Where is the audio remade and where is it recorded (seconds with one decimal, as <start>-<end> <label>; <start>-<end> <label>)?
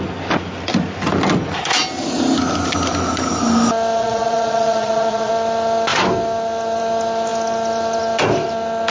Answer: 0.0-4.0 recorded; 4.0-5.3 remade; 5.3-8.9 recorded